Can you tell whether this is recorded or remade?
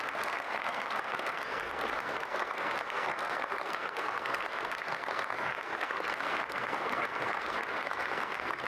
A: remade